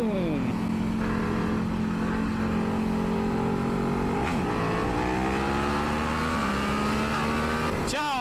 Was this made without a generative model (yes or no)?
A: yes